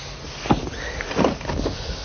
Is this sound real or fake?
real